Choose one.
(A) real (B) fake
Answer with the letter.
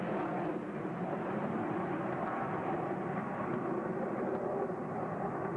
A